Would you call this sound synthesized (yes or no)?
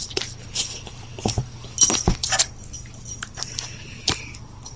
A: no